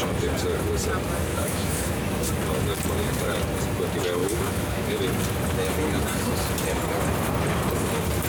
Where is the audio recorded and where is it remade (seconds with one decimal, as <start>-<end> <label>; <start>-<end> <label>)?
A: 0.0-1.3 recorded; 1.3-2.3 remade; 2.3-4.2 recorded; 4.2-5.0 remade; 5.0-8.3 recorded